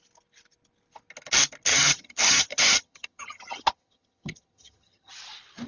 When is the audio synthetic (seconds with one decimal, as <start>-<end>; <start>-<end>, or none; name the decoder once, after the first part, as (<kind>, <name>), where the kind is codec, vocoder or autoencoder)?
1.7-5.1 (vocoder, HiFi-GAN)